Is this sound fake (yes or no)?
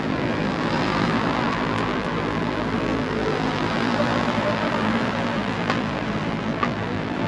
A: yes